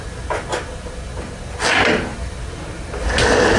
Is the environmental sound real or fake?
real